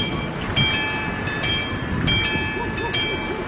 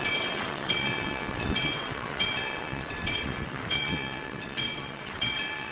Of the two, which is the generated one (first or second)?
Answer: second